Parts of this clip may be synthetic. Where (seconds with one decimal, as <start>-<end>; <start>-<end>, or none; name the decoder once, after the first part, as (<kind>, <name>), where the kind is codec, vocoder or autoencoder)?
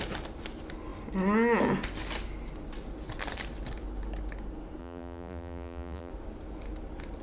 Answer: 4.8-6.1 (vocoder, BigVGAN v2)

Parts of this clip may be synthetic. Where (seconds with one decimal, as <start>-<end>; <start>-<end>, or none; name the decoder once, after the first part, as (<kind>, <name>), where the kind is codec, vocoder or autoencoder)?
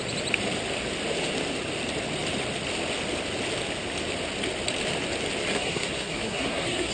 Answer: 5.5-6.9 (codec, SNAC)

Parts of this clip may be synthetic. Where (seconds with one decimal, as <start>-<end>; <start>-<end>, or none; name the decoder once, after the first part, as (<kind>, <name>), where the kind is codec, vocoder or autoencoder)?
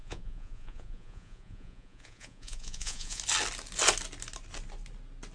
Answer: 0.0-3.2 (vocoder, Vocos)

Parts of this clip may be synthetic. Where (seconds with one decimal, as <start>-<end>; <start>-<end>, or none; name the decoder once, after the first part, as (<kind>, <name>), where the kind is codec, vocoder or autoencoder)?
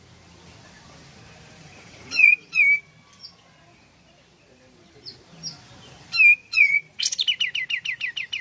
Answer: 1.6-2.6 (vocoder, Vocos); 6.4-7.0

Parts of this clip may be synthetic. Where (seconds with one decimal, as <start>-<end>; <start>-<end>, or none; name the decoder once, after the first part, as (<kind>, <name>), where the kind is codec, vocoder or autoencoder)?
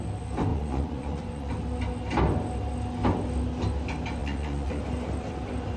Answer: 0.5-1.5 (vocoder, Vocos); 4.2-4.8